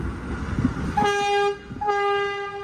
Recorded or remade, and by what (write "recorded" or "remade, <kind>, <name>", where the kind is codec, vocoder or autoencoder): recorded